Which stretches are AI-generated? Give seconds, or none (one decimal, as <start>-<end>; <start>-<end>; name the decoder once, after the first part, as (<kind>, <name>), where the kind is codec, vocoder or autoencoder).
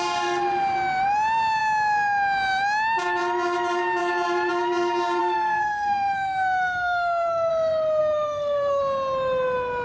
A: 5.2-7.5 (codec, SNAC); 8.0-8.8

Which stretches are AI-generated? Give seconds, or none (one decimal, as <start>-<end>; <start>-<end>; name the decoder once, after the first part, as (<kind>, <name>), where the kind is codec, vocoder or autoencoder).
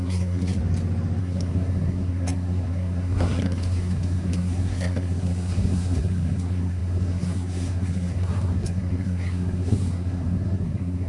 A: 0.0-0.6 (codec, SNAC); 1.2-11.1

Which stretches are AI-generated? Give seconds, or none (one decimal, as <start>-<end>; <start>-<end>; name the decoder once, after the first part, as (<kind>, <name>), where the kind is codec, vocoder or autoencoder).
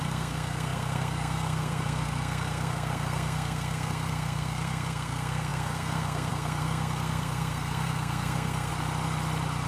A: 0.0-8.7 (codec, SNAC)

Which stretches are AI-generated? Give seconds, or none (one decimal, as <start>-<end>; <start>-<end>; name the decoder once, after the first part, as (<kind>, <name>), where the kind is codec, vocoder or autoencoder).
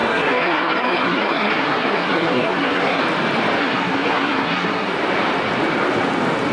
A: 0.0-3.0 (codec, SNAC); 3.6-4.9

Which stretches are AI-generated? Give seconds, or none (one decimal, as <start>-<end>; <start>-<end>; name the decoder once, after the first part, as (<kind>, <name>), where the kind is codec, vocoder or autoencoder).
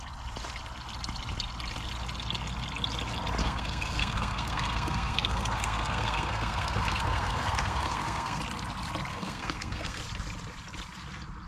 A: 3.4-8.4 (codec, SNAC); 9.1-10.0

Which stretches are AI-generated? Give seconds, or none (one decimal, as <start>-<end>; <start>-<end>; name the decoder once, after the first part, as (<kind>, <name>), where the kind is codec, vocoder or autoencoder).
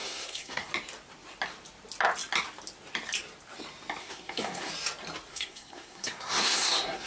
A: 0.0-0.7 (codec, SNAC); 4.0-4.7; 5.3-7.1